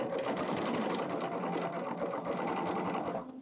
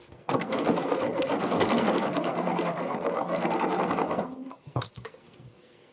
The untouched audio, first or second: first